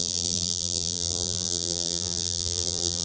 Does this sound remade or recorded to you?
remade